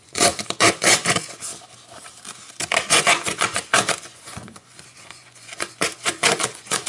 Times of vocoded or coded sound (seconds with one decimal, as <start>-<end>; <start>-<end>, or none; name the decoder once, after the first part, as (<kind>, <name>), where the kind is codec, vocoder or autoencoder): 0.0-1.5 (vocoder, Vocos); 2.9-6.9